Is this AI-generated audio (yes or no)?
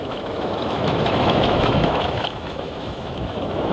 yes